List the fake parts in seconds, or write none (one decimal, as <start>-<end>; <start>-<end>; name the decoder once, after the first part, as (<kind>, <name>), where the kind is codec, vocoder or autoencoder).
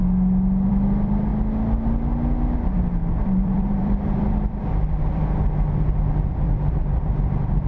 0.7-1.3 (vocoder, BigVGAN v2); 2.6-7.7